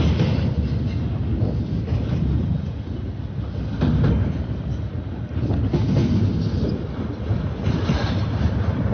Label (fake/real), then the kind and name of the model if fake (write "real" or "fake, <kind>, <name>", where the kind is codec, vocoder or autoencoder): real